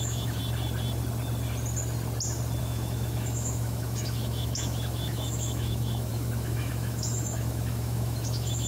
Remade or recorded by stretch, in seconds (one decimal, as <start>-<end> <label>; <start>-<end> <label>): 0.0-0.4 remade; 0.4-2.6 recorded; 2.6-8.7 remade